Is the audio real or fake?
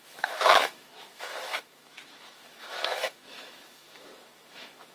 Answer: fake